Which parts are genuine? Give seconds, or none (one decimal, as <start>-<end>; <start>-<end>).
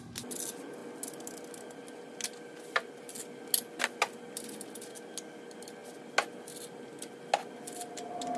0.0-8.4